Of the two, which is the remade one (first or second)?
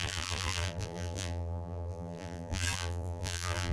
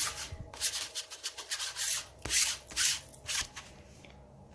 first